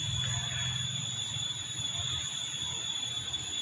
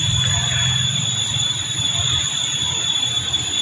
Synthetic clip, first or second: second